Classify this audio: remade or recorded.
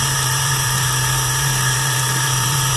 remade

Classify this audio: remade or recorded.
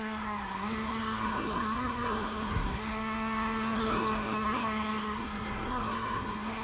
remade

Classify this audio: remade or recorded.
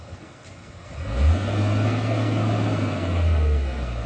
remade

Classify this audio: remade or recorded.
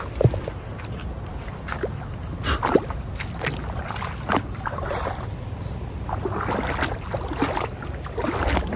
recorded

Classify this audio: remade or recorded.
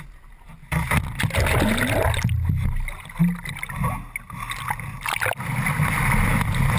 recorded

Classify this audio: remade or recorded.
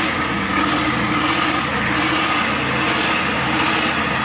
recorded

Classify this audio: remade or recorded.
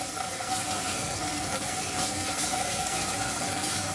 remade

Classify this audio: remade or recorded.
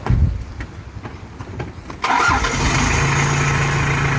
recorded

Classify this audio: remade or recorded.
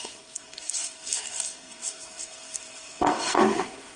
remade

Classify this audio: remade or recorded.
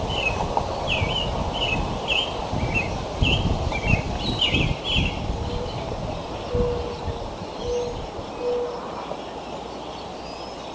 recorded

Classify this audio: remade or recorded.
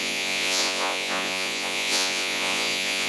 remade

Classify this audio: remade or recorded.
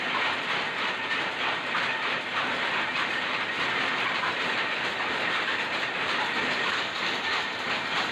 recorded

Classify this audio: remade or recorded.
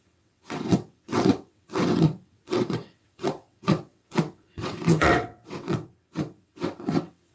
remade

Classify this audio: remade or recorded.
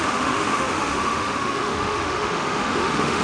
remade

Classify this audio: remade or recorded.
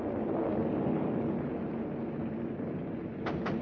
recorded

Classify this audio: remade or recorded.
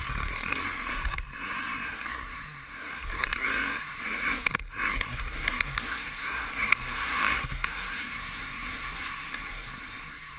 remade